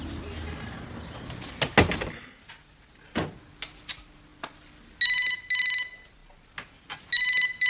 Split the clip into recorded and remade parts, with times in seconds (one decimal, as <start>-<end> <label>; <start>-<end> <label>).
0.0-7.7 recorded